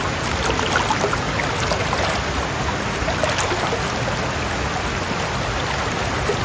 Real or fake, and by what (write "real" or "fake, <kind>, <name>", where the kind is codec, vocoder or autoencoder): real